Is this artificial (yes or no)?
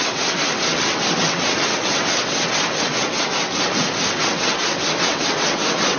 yes